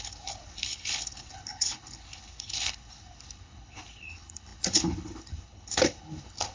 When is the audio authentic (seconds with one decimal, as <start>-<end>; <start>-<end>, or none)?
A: none

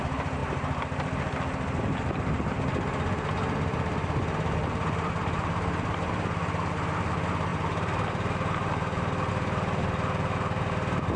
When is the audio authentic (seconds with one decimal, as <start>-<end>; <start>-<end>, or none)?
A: 0.0-11.2

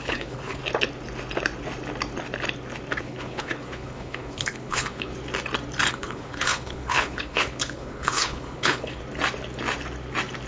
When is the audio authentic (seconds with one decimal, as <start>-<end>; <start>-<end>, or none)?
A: 0.6-3.0; 5.1-5.9; 9.0-10.5